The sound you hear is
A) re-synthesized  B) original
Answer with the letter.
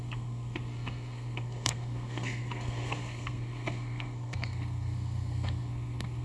A